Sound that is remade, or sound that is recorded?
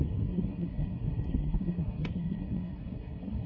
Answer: remade